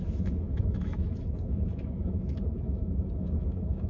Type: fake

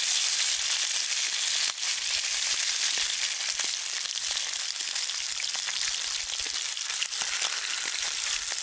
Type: real